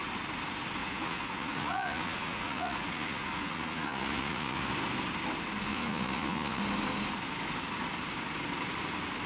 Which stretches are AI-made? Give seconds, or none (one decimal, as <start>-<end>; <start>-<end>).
0.8-4.7; 5.7-6.6